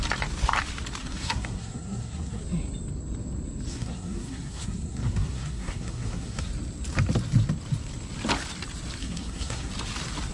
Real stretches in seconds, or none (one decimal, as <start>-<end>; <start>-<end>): 0.0-1.0; 2.4-3.7; 6.5-9.0; 9.7-10.3